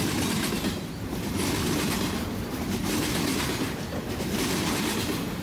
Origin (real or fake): real